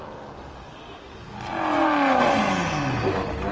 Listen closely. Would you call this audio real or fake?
real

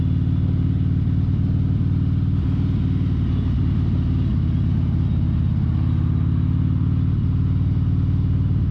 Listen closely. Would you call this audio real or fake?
real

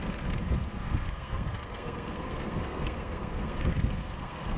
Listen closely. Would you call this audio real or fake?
fake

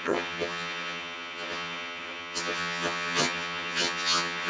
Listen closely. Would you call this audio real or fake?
fake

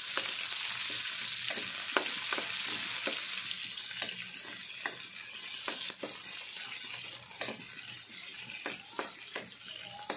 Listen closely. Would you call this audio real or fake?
real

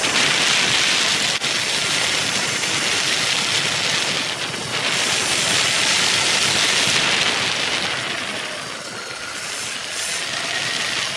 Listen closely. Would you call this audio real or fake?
real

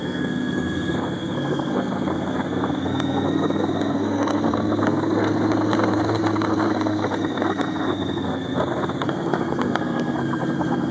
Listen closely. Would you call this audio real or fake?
fake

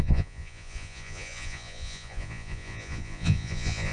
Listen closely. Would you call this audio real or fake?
fake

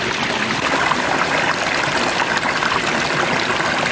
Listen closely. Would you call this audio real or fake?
real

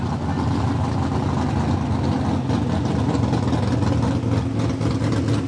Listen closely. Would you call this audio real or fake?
real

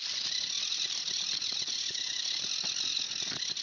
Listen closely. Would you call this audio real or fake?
real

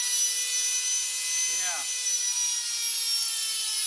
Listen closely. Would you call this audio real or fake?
real